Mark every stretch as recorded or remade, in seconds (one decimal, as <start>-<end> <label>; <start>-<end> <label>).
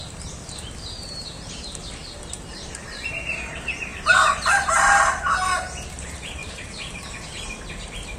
0.0-6.4 recorded; 6.4-7.2 remade; 7.2-8.2 recorded